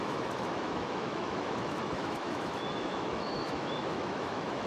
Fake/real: fake